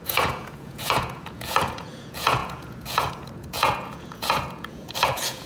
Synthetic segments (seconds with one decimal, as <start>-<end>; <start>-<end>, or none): 0.0-5.5